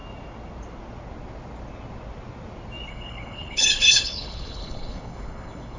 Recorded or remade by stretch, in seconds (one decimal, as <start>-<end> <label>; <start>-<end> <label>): 0.0-2.9 recorded; 2.9-5.8 remade